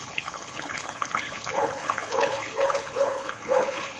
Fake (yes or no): yes